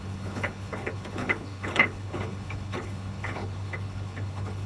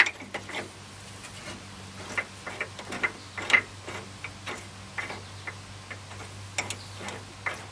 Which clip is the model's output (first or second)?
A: first